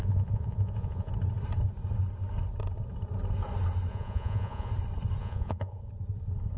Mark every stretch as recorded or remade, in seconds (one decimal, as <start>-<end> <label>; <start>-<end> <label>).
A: 0.0-1.1 remade; 1.1-3.9 recorded; 3.9-4.7 remade; 4.7-5.2 recorded; 5.2-5.9 remade; 5.9-6.6 recorded

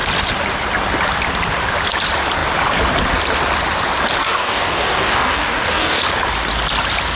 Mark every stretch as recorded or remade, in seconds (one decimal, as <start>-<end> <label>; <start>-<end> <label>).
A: 0.0-4.2 recorded; 4.2-6.0 remade; 6.0-7.2 recorded

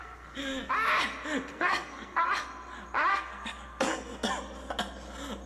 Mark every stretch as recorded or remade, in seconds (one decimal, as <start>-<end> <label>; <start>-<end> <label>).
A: 0.0-0.7 remade; 0.7-1.5 recorded; 1.5-2.2 remade; 2.2-3.1 recorded; 3.1-4.3 remade; 4.3-5.5 recorded

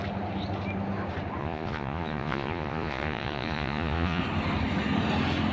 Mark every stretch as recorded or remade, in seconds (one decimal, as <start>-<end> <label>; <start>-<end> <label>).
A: 0.0-1.4 recorded; 1.4-4.2 remade; 4.2-5.5 recorded

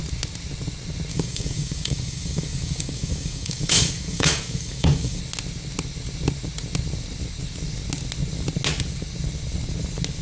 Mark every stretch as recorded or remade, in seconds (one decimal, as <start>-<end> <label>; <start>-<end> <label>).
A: 0.0-1.1 recorded; 1.1-5.2 remade; 5.2-10.2 recorded

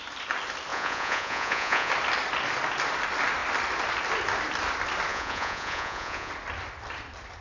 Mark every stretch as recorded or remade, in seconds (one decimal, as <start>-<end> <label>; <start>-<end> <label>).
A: 0.0-0.7 recorded; 0.7-1.9 remade; 1.9-5.1 recorded; 5.1-6.3 remade; 6.3-7.4 recorded

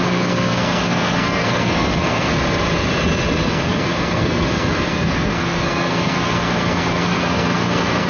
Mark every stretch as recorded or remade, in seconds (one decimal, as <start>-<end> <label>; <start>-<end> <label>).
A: 0.0-2.3 remade; 2.3-3.5 recorded; 3.5-8.1 remade